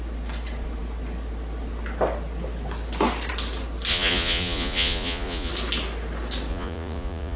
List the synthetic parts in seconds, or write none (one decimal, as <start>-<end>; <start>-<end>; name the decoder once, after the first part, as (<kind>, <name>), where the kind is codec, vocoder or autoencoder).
3.9-5.5 (vocoder, Vocos); 6.5-7.4